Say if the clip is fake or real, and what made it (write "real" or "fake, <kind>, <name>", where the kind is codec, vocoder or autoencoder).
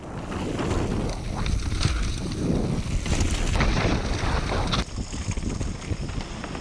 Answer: real